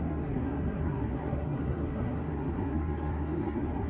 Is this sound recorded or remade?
remade